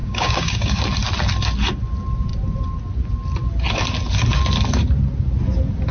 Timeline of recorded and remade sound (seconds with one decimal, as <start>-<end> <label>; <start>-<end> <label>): 0.0-0.8 remade; 0.8-5.9 recorded